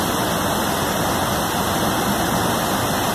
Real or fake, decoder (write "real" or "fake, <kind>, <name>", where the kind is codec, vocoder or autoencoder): real